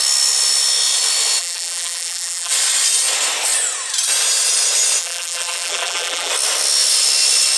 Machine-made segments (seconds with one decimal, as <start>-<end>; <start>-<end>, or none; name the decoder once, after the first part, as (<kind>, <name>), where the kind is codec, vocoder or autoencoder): 1.4-2.5 (vocoder, BigVGAN v2); 5.0-6.3